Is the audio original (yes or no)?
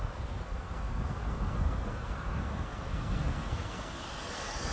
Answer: no